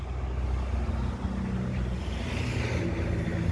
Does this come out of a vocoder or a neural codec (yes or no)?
no